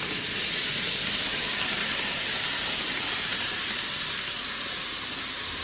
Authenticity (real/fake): real